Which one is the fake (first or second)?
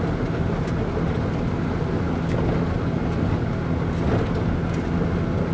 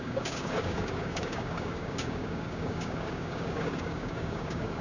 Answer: second